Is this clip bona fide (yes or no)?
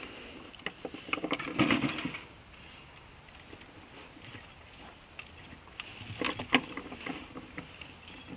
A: yes